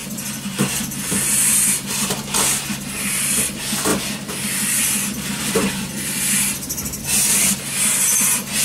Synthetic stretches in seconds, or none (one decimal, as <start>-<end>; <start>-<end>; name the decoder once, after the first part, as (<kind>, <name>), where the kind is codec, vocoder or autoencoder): none